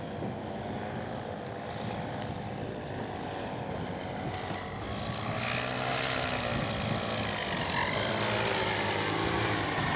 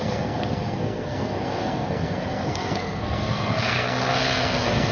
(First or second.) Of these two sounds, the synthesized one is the second